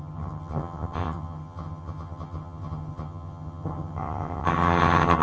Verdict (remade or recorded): remade